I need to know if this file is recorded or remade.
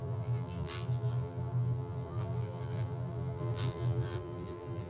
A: remade